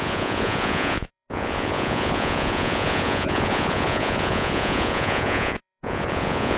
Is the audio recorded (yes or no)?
no